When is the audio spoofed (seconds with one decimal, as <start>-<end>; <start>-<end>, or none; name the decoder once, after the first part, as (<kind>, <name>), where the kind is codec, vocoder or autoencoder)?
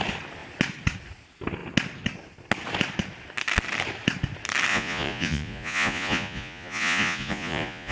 4.7-7.9 (vocoder, Vocos)